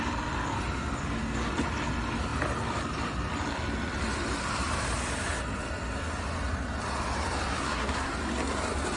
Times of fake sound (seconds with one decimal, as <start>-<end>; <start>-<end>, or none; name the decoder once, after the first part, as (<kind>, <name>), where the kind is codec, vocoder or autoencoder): 7.6-8.1 (codec, SNAC)